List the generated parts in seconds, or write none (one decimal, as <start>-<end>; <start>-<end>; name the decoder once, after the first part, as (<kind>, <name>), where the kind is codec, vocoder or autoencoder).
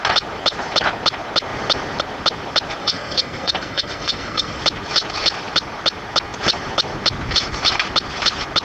2.8-4.6 (codec, SNAC)